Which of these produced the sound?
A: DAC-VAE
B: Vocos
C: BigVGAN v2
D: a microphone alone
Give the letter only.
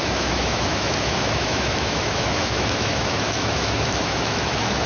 A